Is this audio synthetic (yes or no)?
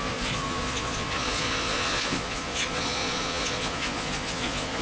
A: yes